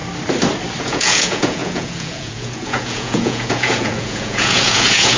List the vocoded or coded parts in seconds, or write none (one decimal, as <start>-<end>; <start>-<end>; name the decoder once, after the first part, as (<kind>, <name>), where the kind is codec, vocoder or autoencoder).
0.8-5.2 (vocoder, Vocos)